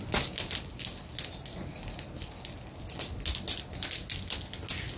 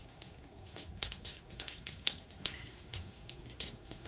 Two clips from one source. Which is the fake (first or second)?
second